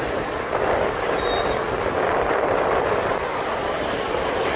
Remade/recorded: recorded